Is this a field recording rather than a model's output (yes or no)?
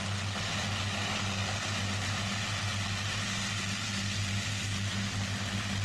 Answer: yes